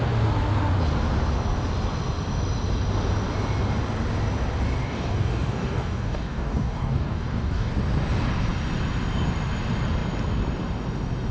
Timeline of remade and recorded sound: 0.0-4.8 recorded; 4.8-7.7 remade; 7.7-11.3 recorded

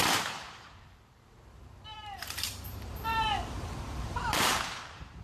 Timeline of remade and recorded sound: 0.0-3.1 remade; 3.1-3.8 recorded; 3.8-5.2 remade

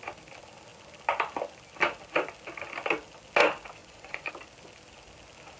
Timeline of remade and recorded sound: 0.0-3.8 recorded; 3.8-4.3 remade; 4.3-5.6 recorded

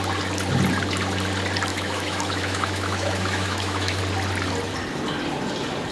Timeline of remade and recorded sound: 0.0-1.7 recorded; 1.7-4.0 remade; 4.0-5.9 recorded

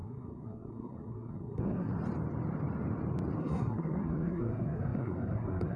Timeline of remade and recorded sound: 0.0-1.9 remade; 1.9-3.4 recorded; 3.4-5.8 remade

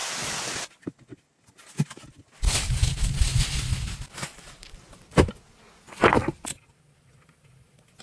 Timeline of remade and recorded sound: 0.0-4.3 recorded; 4.3-5.3 remade; 5.3-8.0 recorded

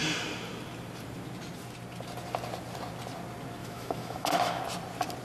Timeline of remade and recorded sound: 0.0-3.6 recorded; 3.6-4.6 remade; 4.6-5.2 recorded

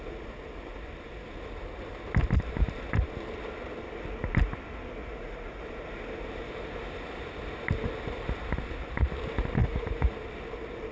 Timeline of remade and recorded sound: 0.0-5.0 recorded; 5.0-5.6 remade; 5.6-9.6 recorded; 9.6-10.1 remade; 10.1-10.9 recorded